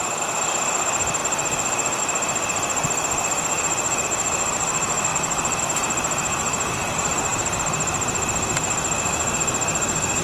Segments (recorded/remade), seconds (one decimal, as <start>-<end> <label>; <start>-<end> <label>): 0.0-1.2 recorded; 1.2-2.0 remade; 2.0-5.1 recorded; 5.1-5.6 remade; 5.6-10.2 recorded